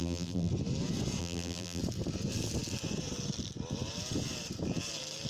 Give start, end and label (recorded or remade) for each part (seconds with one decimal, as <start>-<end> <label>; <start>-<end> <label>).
0.0-0.5 remade; 0.5-1.2 recorded; 1.2-1.8 remade; 1.8-5.3 recorded